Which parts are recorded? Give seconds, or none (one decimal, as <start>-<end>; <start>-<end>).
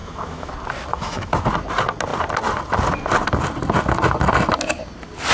0.5-0.9; 1.4-5.3